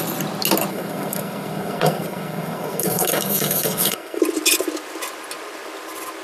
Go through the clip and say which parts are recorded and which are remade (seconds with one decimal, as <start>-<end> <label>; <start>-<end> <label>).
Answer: 0.0-0.7 recorded; 0.7-4.2 remade; 4.2-6.2 recorded